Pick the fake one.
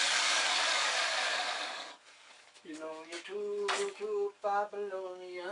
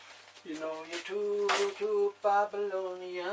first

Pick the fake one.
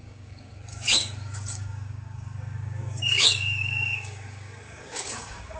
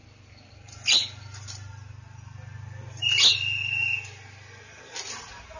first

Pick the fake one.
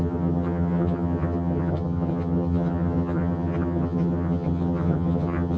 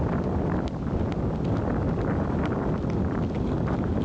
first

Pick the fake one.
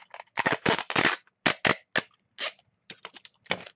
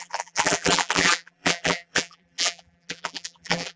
second